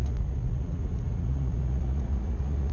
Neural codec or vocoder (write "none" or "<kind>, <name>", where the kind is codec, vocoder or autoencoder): vocoder, Vocos